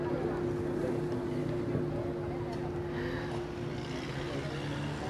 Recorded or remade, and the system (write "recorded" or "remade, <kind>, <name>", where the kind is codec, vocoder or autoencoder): recorded